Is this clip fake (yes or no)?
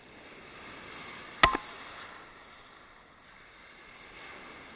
no